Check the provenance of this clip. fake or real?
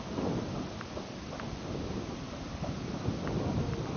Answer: real